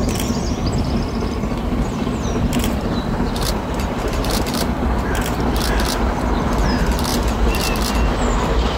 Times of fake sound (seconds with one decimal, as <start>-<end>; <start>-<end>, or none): 0.6-5.6